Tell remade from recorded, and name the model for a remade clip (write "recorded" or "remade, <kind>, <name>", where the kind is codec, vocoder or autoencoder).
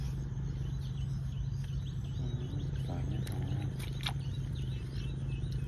recorded